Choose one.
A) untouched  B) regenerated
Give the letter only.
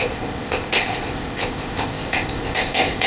B